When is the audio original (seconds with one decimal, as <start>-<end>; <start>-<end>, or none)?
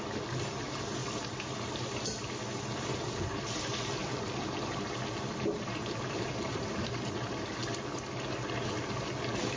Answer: 0.0-1.0; 2.1-4.0; 7.1-9.6